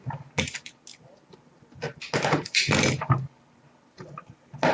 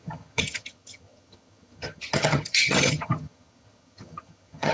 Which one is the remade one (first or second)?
second